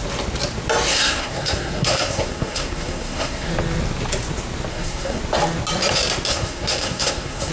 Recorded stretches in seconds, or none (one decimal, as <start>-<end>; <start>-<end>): 0.0-0.9; 3.5-4.7; 5.2-6.3